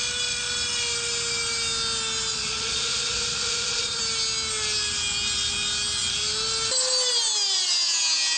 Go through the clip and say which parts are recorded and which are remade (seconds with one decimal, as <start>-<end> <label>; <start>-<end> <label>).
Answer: 0.0-2.3 recorded; 2.3-4.0 remade; 4.0-8.4 recorded

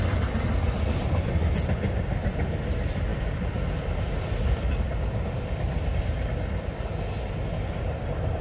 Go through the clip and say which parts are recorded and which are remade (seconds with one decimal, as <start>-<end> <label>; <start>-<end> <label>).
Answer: 0.0-8.4 recorded